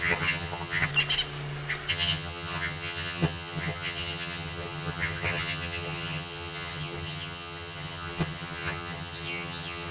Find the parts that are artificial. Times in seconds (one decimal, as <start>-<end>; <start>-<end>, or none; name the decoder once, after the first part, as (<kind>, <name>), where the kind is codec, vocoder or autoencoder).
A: 0.0-0.9 (vocoder, HiFi-GAN); 1.9-9.9